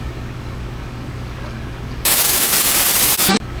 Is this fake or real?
fake